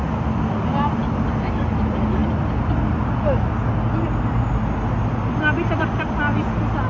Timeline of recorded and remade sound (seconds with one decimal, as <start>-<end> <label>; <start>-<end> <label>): 0.0-6.9 recorded